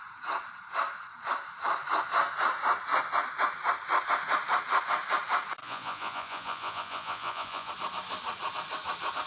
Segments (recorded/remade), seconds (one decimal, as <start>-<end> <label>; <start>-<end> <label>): 0.0-5.6 recorded; 5.6-7.7 remade; 7.7-9.3 recorded